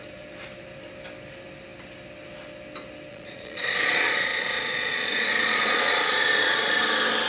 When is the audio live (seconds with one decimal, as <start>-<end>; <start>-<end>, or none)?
0.0-3.1; 6.8-7.3